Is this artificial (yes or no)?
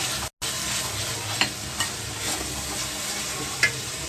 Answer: no